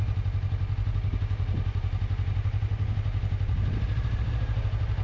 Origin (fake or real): real